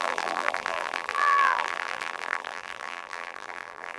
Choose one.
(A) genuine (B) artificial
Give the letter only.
B